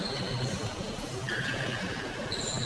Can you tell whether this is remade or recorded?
recorded